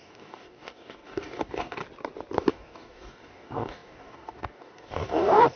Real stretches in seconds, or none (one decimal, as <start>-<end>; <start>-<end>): 1.8-2.5

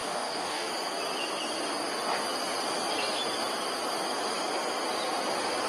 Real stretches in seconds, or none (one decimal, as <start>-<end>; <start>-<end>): 0.7-5.7

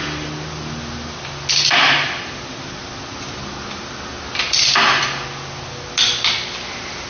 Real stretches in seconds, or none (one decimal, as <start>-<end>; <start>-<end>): 0.0-7.1

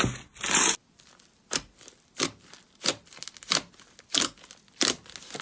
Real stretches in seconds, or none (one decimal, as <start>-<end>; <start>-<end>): 0.0-5.4

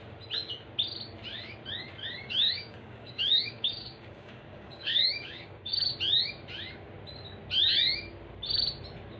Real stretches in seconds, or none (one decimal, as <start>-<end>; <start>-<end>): 0.0-2.0; 5.9-9.2

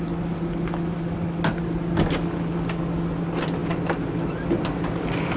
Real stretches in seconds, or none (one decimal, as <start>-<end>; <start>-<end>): 0.0-5.4

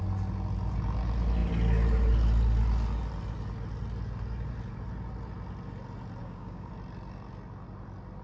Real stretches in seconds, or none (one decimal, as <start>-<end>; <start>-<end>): 0.0-6.2; 6.7-8.2